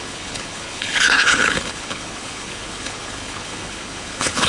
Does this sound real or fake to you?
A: fake